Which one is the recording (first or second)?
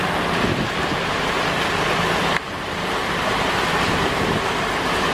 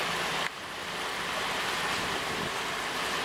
second